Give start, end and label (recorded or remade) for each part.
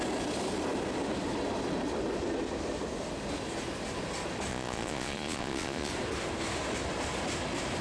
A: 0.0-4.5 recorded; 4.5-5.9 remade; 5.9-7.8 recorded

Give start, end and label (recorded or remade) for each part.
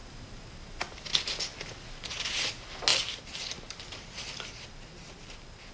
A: 0.0-5.7 recorded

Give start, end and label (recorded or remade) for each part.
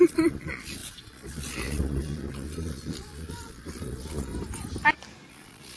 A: 0.0-4.3 remade; 4.3-5.3 recorded; 5.3-5.8 remade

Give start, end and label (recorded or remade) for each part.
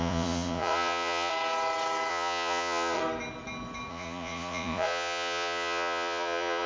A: 0.0-1.3 remade; 1.3-2.1 recorded; 2.1-3.0 remade; 3.0-3.9 recorded; 3.9-6.7 remade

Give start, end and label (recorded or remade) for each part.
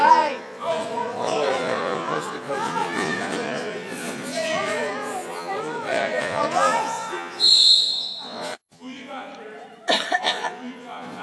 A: 0.0-9.3 remade; 9.3-10.2 recorded; 10.2-11.2 remade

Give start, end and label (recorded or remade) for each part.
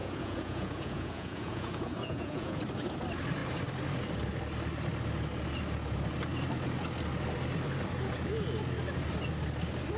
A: 0.0-2.6 remade; 2.6-10.0 recorded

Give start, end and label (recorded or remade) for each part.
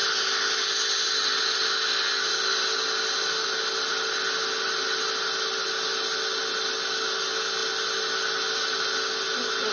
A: 0.0-9.7 recorded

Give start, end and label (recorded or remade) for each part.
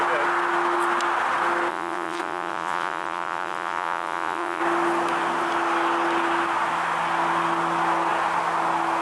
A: 0.0-1.7 recorded; 1.7-4.6 remade; 4.6-9.0 recorded